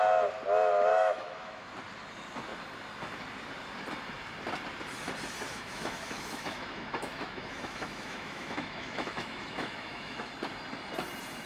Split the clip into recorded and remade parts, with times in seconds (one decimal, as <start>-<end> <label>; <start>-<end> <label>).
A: 0.0-0.9 recorded; 0.9-1.7 remade; 1.7-5.5 recorded; 5.5-10.3 remade; 10.3-11.5 recorded